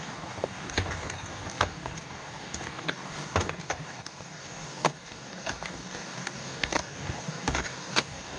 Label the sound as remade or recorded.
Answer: remade